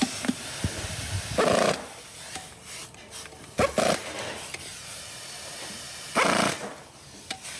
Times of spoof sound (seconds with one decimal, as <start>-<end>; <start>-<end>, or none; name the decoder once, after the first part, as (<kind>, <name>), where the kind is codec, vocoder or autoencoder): none